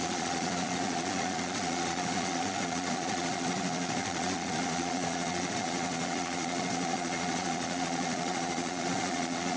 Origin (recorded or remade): remade